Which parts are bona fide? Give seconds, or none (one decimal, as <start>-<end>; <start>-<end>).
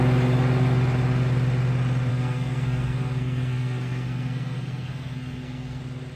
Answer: 0.0-2.1; 5.8-6.2